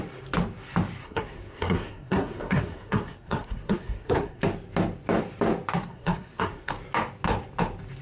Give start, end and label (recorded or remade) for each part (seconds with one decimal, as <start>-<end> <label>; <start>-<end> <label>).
0.0-1.0 recorded; 1.0-4.4 remade; 4.4-5.9 recorded; 5.9-6.7 remade; 6.7-8.0 recorded